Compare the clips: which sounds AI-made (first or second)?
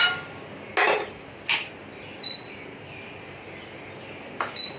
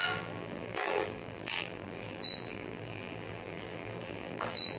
second